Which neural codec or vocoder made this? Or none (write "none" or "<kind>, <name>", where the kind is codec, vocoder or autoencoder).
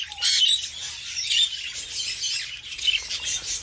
none